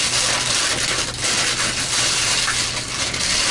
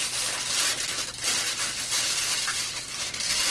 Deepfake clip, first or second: second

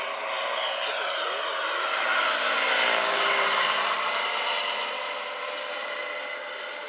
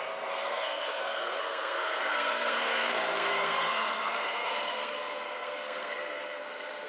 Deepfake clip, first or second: second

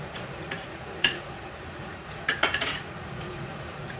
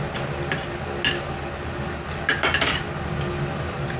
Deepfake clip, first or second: first